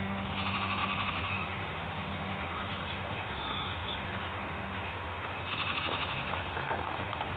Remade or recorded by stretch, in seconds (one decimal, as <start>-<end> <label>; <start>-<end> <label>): 0.0-7.4 remade